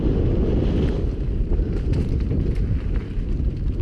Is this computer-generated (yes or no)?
no